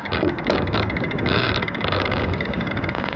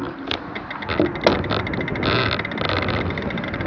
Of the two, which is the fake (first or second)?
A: first